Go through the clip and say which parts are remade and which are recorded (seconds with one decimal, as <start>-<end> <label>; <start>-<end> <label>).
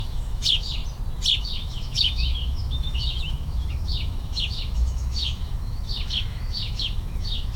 0.0-0.8 remade; 0.8-1.4 recorded; 1.4-7.6 remade